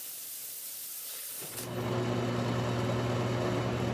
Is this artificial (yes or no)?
no